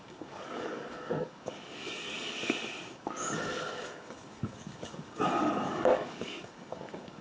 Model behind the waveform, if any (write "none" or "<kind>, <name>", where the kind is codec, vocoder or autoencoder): codec, DAC